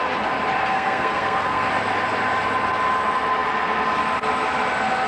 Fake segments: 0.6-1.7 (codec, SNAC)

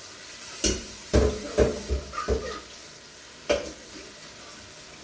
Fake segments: none

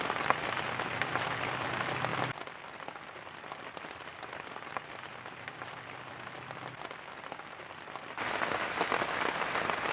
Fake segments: none

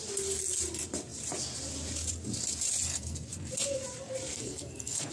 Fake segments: 2.9-3.5 (codec, SNAC); 4.3-5.1

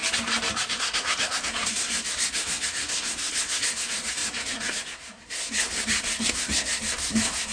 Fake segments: 0.7-7.5 (codec, SNAC)

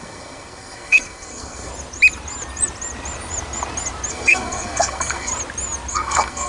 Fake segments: 0.0-1.7 (codec, SNAC); 4.1-5.3; 5.9-6.5